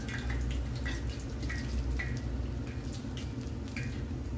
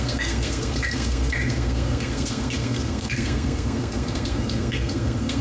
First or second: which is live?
first